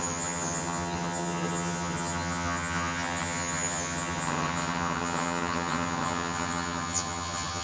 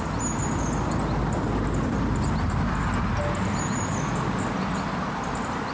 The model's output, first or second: first